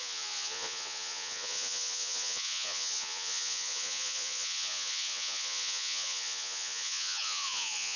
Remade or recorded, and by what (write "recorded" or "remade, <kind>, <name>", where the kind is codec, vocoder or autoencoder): remade, vocoder, Vocos